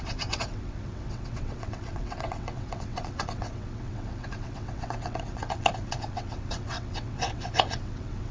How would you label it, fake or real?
fake